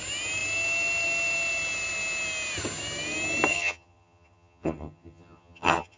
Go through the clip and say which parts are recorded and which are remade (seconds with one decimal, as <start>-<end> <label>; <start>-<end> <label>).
0.0-3.5 recorded; 3.5-6.0 remade